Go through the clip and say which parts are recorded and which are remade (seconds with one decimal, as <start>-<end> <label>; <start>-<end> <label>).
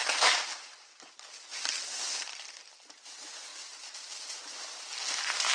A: 0.0-1.0 remade; 1.0-5.5 recorded